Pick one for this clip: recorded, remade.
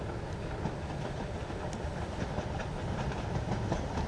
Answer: recorded